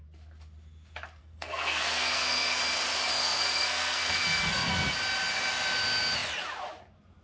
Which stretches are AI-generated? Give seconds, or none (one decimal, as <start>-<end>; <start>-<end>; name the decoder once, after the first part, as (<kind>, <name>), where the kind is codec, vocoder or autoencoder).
1.2-2.6 (codec, SNAC); 3.2-4.7